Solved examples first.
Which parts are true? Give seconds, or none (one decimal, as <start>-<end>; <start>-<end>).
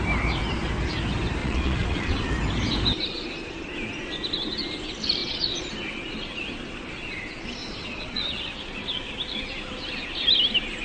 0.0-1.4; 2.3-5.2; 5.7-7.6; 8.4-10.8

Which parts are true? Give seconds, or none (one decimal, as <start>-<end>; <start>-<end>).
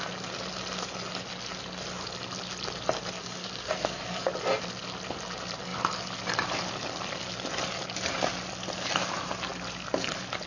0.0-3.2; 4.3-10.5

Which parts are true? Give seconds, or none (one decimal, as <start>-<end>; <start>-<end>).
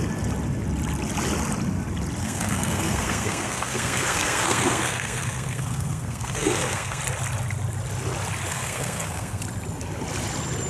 0.0-2.2; 7.0-8.5; 9.4-10.7